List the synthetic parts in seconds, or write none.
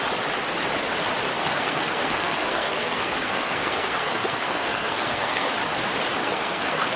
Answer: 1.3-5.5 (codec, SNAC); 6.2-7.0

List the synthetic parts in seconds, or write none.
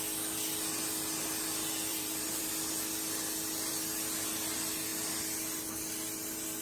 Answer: 1.9-2.5 (vocoder, BigVGAN v2)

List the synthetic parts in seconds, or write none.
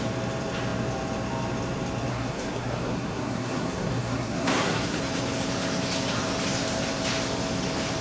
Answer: 2.1-5.0 (codec, SNAC)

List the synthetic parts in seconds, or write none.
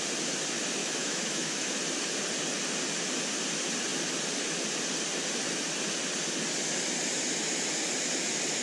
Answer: 0.8-1.8 (autoencoder, DAC-VAE)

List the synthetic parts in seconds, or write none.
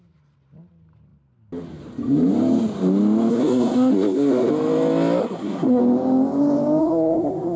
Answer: 3.3-4.5 (codec, SNAC); 5.2-5.8; 6.8-7.6